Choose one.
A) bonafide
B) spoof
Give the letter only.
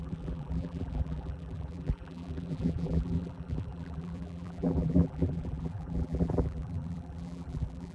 B